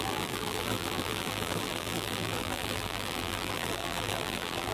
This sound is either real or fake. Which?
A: fake